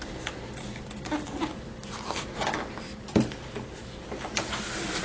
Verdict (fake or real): real